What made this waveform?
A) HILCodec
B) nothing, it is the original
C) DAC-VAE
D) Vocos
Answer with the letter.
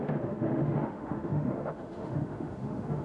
C